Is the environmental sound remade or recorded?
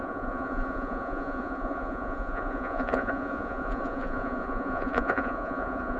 remade